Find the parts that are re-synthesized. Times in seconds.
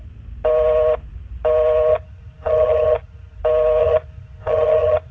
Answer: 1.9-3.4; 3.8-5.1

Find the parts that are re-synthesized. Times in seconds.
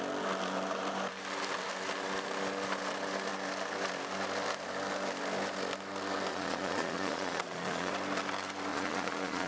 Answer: 6.3-7.9; 8.7-9.5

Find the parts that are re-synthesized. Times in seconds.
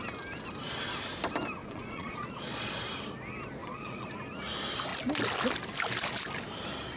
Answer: 1.6-2.8; 3.6-4.1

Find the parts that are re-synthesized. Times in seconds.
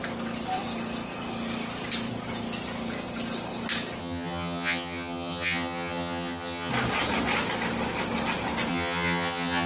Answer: 4.0-6.7; 8.7-9.7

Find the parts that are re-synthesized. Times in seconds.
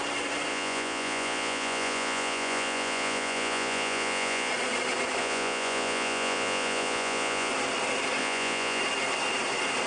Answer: 0.5-4.5; 5.2-7.5; 8.2-8.8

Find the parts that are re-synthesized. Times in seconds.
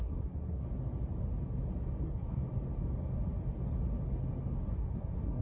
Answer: 0.0-0.6; 2.0-2.4; 4.6-5.4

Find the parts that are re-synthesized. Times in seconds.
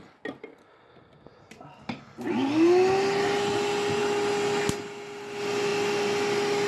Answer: none